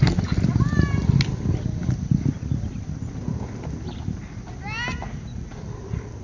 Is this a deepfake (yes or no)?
no